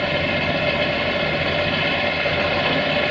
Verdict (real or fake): real